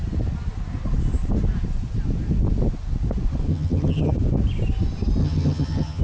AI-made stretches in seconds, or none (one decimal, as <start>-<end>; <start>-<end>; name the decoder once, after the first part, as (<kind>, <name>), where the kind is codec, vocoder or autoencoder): 3.5-4.1 (vocoder, HiFi-GAN); 5.2-6.0